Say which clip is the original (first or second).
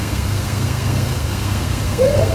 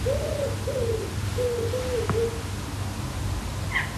second